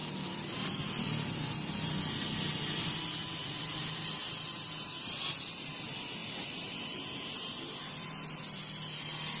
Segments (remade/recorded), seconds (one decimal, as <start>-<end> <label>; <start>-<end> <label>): 0.0-0.9 remade; 0.9-9.4 recorded